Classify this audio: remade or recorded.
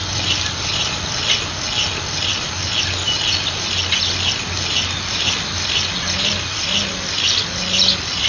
recorded